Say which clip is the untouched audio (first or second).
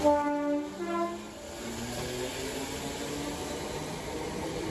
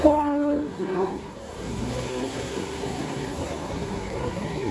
first